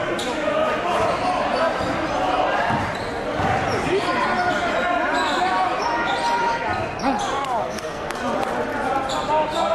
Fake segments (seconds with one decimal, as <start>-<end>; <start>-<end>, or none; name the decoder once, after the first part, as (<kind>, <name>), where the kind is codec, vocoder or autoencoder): 7.6-8.2 (codec, SNAC)